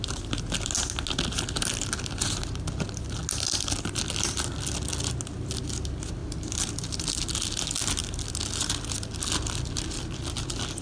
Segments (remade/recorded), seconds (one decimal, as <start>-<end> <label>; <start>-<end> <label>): 0.0-6.2 recorded; 6.2-7.3 remade; 7.3-10.8 recorded